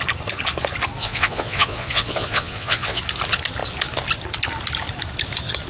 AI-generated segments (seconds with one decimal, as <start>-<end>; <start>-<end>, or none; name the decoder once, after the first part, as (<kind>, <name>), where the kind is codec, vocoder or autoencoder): 1.0-3.0 (vocoder, Vocos)